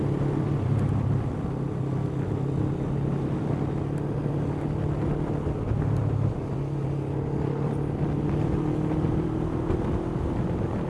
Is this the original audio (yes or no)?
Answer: yes